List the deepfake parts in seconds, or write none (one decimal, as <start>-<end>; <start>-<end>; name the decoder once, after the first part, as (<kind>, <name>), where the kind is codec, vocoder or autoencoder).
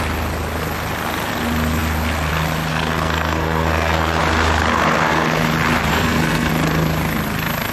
2.7-4.2 (codec, SNAC); 4.7-5.5; 5.9-6.5